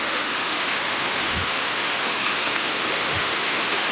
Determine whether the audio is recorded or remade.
remade